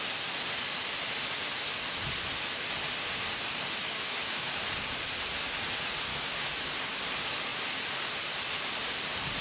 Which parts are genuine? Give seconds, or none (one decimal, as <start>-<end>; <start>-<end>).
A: 0.0-3.8; 4.6-6.1; 6.7-9.4